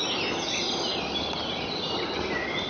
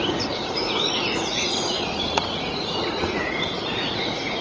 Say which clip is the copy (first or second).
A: second